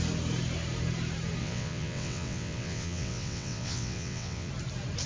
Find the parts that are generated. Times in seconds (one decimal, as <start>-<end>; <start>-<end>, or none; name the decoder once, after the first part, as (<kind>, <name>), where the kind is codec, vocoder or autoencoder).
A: 1.4-4.5 (vocoder, WaveNeXt)